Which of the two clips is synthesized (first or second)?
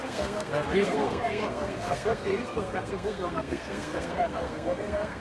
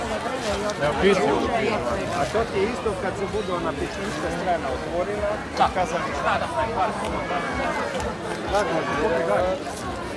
first